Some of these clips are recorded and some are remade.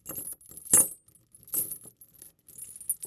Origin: recorded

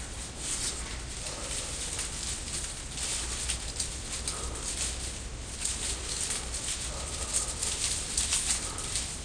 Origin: recorded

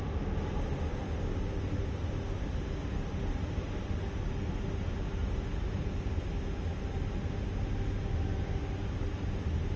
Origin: recorded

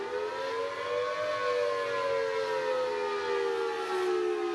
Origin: recorded